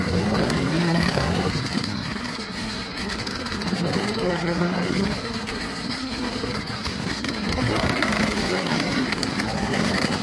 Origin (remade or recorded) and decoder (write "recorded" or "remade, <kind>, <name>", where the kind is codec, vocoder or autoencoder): remade, codec, SNAC